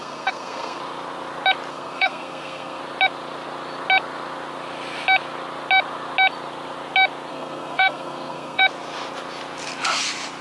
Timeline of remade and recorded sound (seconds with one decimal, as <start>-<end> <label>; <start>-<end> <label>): 0.0-0.8 remade; 0.8-1.7 recorded; 1.7-2.8 remade; 2.8-7.3 recorded; 7.3-8.6 remade; 8.6-10.4 recorded